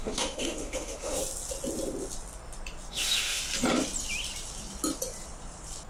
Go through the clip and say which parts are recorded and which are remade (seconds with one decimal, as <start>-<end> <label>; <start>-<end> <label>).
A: 0.0-1.2 remade; 1.2-2.9 recorded; 2.9-3.4 remade; 3.4-5.9 recorded